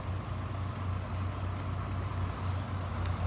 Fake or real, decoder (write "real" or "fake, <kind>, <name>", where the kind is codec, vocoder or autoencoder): real